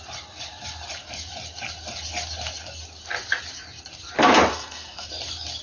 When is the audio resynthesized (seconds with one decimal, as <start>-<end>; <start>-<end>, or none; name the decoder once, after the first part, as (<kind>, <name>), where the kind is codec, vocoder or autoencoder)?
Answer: 4.5-5.1 (codec, SNAC)